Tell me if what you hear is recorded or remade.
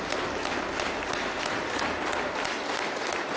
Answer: recorded